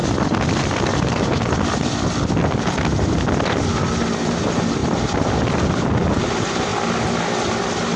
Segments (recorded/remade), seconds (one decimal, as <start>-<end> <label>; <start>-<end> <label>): 0.0-8.0 recorded